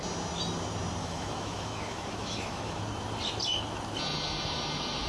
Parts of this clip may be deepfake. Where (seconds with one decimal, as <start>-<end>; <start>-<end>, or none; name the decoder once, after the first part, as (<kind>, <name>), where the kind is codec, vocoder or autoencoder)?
1.0-2.8 (autoencoder, DAC-VAE)